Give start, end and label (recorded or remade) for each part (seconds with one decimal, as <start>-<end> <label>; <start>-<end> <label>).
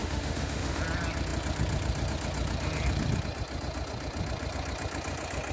0.0-0.8 remade; 0.8-5.5 recorded